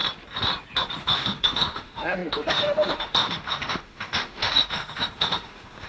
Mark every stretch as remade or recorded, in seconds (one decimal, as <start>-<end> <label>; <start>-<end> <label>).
0.0-1.0 recorded; 1.0-5.9 remade